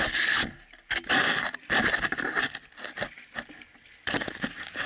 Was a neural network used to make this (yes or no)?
no